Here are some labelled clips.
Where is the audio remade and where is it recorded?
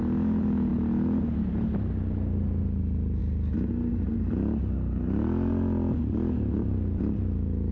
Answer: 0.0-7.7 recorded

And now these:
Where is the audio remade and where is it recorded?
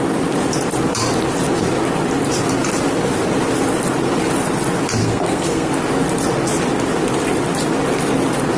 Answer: 0.0-5.0 recorded; 5.0-5.7 remade; 5.7-8.6 recorded